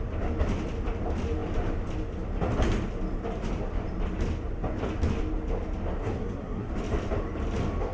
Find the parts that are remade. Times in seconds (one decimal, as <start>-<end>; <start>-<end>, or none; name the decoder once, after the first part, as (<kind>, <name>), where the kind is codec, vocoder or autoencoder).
6.0-6.7 (codec, SNAC)